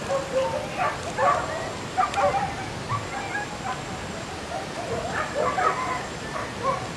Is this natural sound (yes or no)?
yes